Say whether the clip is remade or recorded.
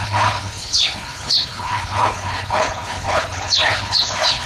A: remade